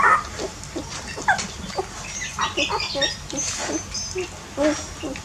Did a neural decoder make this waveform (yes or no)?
no